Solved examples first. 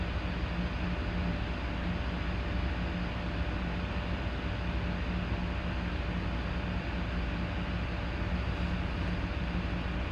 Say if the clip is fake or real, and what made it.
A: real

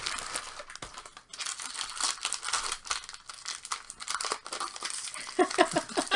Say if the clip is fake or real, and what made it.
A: real